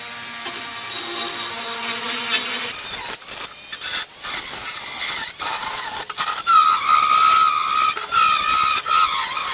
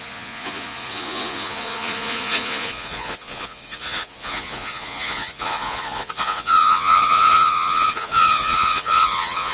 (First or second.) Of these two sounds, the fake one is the second